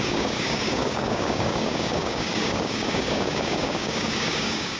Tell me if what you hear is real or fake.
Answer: fake